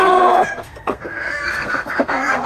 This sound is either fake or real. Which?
fake